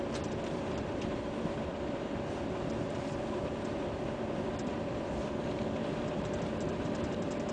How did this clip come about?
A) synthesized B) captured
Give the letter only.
A